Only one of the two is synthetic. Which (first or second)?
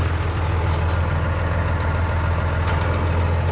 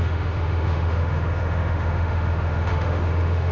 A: second